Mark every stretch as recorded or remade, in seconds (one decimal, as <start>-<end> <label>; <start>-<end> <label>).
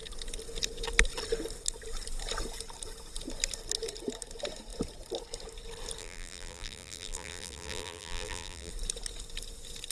0.0-6.0 recorded; 6.0-8.7 remade; 8.7-9.9 recorded